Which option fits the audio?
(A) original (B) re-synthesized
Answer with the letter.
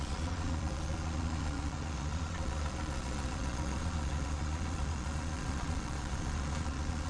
B